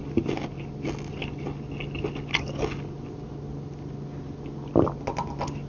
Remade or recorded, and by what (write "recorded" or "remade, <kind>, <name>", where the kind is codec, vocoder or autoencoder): recorded